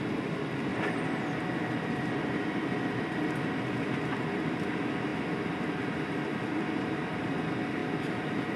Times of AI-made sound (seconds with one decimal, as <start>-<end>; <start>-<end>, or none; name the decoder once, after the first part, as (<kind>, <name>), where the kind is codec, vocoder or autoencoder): 0.7-1.2 (vocoder, BigVGAN v2)